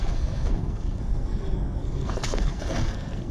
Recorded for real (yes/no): no